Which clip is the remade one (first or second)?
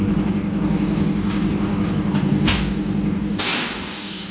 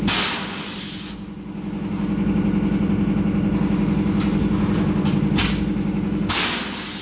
first